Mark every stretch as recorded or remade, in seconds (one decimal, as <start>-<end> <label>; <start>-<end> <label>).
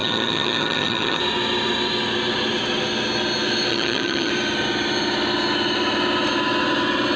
0.0-1.2 remade; 1.2-3.7 recorded; 3.7-4.3 remade; 4.3-7.2 recorded